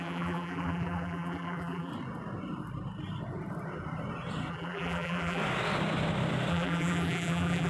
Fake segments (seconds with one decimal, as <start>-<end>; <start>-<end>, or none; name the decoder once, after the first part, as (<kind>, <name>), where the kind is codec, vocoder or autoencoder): 0.0-1.9 (vocoder, BigVGAN v2); 4.5-5.4; 6.5-7.7